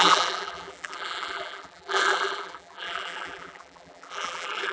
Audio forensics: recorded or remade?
remade